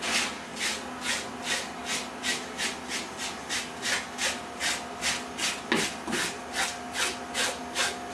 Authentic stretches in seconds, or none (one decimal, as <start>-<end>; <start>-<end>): 0.0-8.1

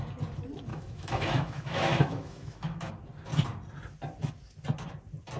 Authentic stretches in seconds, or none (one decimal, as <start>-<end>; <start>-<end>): 0.0-0.7; 2.9-5.4

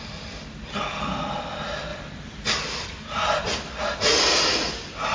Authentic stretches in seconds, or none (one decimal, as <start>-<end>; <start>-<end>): 0.0-5.1

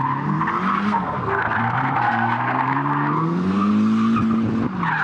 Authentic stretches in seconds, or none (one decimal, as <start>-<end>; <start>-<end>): 0.0-0.7; 3.7-5.0

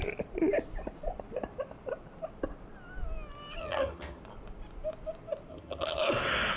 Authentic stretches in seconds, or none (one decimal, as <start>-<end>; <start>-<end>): 0.0-3.6; 4.2-5.5; 6.0-6.6

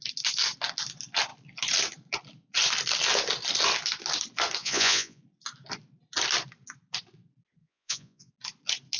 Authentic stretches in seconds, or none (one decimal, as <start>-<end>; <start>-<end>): 0.0-4.6; 5.2-7.6; 8.3-9.0